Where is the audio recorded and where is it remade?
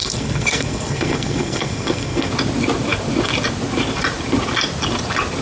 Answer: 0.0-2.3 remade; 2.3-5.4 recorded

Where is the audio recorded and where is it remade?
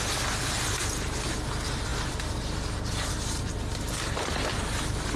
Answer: 0.0-5.2 recorded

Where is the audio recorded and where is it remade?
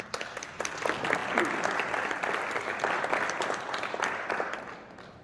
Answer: 0.0-5.2 recorded